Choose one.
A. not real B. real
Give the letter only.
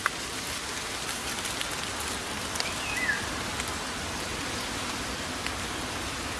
B